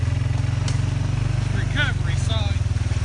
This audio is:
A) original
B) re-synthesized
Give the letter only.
A